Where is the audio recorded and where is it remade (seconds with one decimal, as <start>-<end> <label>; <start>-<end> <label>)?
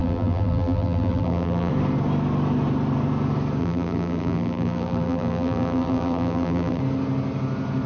0.0-1.7 remade; 1.7-3.6 recorded; 3.6-6.8 remade; 6.8-7.9 recorded